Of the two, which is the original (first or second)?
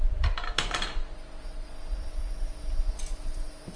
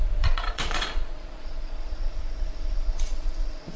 first